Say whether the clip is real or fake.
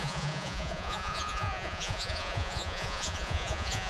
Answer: fake